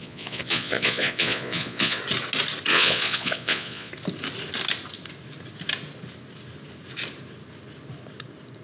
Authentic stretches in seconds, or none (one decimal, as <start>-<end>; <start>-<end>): 2.0-2.7; 3.9-8.6